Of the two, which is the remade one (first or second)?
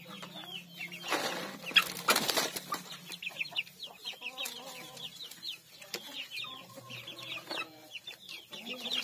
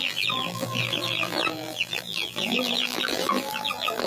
second